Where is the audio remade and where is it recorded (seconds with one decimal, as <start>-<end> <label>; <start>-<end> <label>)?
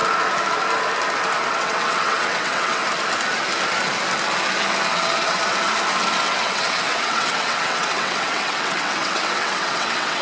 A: 0.0-1.5 recorded; 1.5-2.8 remade; 2.8-4.9 recorded; 4.9-5.4 remade; 5.4-6.2 recorded; 6.2-10.2 remade